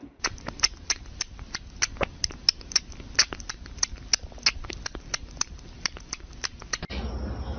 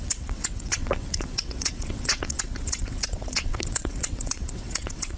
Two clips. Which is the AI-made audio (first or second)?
second